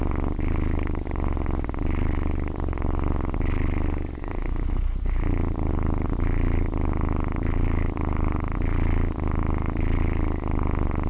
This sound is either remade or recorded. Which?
recorded